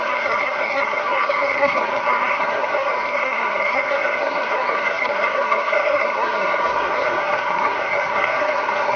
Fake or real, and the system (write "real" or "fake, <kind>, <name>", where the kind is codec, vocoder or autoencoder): fake, codec, SNAC